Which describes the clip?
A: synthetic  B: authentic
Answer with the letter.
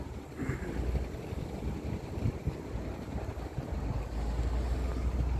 B